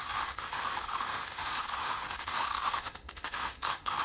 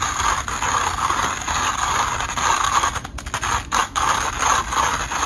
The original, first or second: second